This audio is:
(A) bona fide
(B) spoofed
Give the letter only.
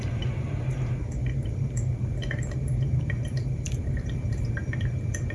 B